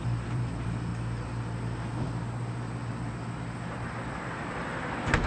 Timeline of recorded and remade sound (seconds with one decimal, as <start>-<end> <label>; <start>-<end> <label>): 0.0-0.9 remade; 0.9-4.1 recorded; 4.1-5.3 remade